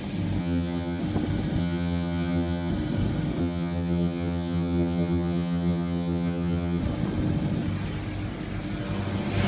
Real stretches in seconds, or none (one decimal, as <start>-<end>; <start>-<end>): 0.0-0.4; 1.0-1.6; 2.7-3.4; 6.8-9.5